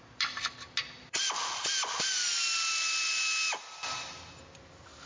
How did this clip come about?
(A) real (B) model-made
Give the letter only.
A